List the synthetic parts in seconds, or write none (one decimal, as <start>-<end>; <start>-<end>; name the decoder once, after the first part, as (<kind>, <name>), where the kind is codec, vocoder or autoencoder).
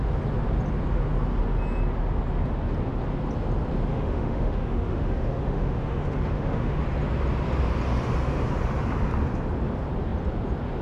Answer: 3.9-6.8 (autoencoder, DAC-VAE)